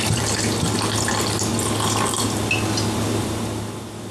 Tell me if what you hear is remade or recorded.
recorded